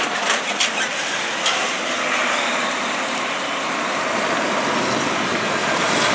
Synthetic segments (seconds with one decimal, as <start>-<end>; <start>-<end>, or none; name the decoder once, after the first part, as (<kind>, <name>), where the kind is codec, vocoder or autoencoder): none